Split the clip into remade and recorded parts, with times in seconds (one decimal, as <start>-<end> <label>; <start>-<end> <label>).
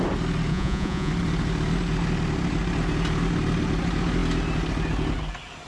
0.0-0.5 recorded; 0.5-1.1 remade; 1.1-5.7 recorded